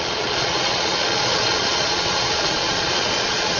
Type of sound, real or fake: fake